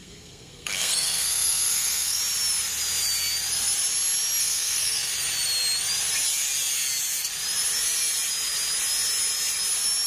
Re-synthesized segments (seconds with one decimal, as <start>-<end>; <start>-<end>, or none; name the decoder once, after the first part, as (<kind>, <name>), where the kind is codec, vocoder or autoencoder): 0.0-2.2 (codec, SNAC); 4.4-5.1